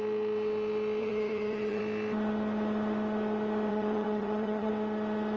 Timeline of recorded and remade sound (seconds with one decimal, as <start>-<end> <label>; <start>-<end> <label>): 0.0-1.0 recorded; 1.0-1.8 remade; 1.8-3.7 recorded; 3.7-4.7 remade; 4.7-5.4 recorded